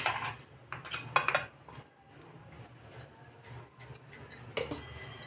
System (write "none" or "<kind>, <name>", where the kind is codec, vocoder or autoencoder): none